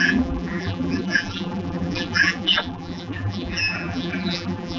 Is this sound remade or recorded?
remade